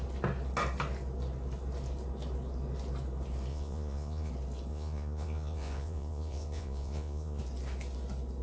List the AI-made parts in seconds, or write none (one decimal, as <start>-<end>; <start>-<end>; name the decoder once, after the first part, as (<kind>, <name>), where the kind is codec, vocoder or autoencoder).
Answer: 3.5-4.3 (vocoder, Vocos); 4.7-7.4